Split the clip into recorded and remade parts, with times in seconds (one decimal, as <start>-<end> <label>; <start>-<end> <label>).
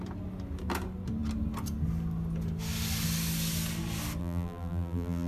0.0-4.2 recorded; 4.2-5.3 remade